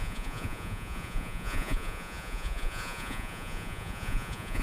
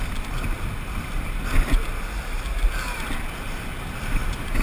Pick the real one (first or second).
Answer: second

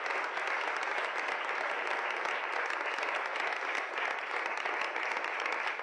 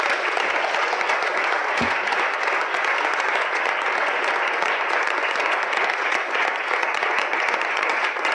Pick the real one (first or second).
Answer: first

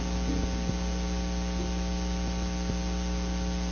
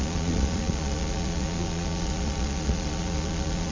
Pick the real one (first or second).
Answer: first